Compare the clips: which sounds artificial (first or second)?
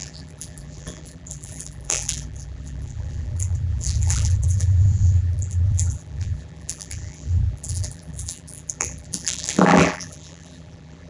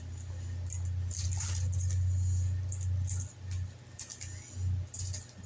first